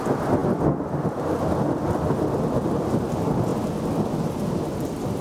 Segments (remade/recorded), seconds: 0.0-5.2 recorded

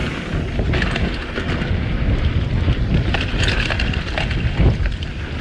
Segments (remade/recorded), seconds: 0.0-5.4 recorded

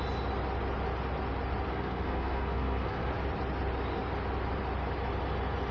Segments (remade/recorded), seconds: 0.0-1.7 recorded; 1.7-3.1 remade; 3.1-5.7 recorded

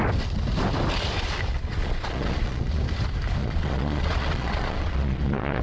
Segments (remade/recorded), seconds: 0.0-1.5 recorded; 1.5-2.8 remade; 2.8-3.4 recorded; 3.4-5.6 remade

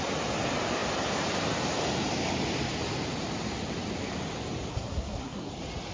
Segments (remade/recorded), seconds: 0.0-4.7 recorded; 4.7-5.5 remade; 5.5-5.9 recorded

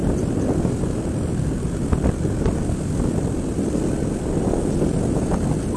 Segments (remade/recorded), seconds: 0.0-5.8 recorded

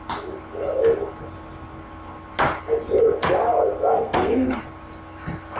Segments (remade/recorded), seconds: 0.0-3.9 recorded; 3.9-4.6 remade; 4.6-5.6 recorded